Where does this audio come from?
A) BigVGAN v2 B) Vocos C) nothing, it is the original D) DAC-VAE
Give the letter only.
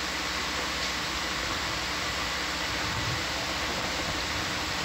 C